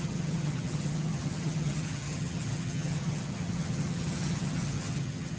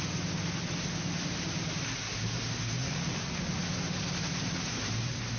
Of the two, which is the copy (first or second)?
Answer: first